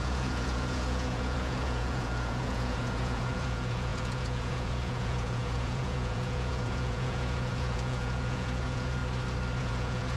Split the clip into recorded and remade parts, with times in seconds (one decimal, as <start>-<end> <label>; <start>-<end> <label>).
0.0-9.0 remade; 9.0-9.6 recorded; 9.6-10.2 remade